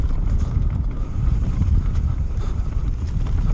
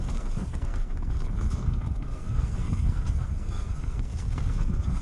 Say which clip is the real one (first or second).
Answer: first